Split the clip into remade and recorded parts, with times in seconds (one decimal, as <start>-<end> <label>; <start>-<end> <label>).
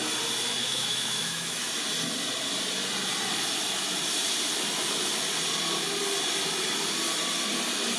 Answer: 0.0-0.6 recorded; 0.6-1.6 remade; 1.6-8.0 recorded